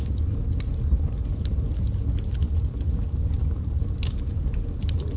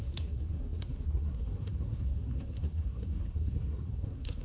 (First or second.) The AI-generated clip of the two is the second